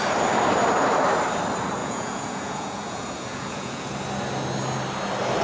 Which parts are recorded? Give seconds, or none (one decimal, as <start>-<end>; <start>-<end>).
0.0-1.8; 3.9-5.4